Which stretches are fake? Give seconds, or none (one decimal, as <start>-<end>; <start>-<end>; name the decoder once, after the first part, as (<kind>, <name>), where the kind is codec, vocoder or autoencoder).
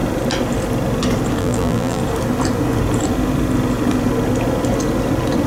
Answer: 1.4-2.0 (vocoder, BigVGAN v2)